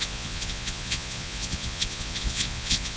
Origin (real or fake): fake